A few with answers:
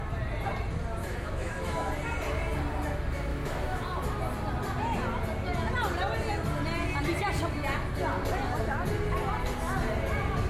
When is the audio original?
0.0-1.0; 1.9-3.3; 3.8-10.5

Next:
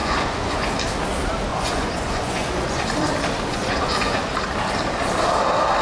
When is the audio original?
0.7-1.5; 2.8-3.5; 4.3-5.8

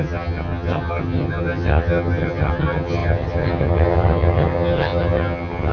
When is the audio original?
none

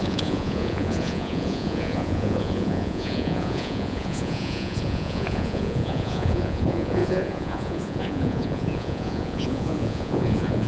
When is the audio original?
none

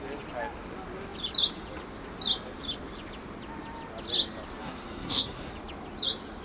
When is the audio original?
0.0-4.6; 5.5-6.4

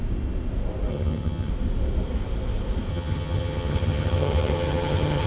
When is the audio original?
0.0-0.9; 1.5-2.9

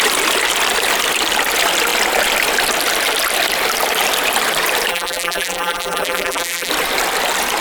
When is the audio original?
0.0-4.9; 6.7-7.6

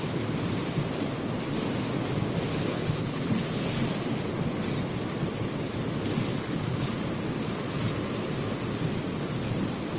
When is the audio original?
0.0-2.7; 3.8-6.3; 6.9-10.0